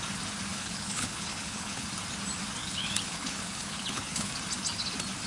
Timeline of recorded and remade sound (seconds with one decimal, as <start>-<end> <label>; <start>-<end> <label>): 0.0-0.5 recorded; 0.5-1.9 remade; 1.9-2.6 recorded; 2.6-4.3 remade; 4.3-5.3 recorded